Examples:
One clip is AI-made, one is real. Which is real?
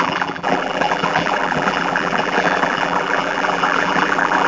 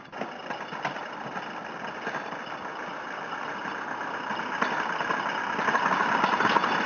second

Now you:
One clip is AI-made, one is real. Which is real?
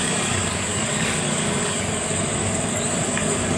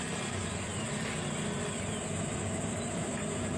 second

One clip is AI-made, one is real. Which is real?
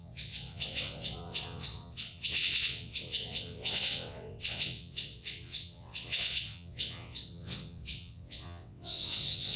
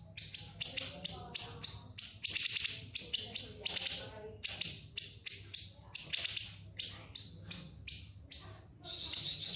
second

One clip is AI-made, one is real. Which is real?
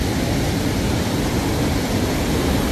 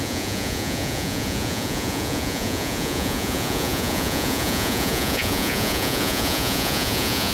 first